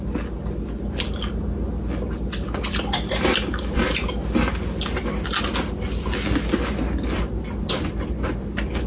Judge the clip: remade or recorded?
recorded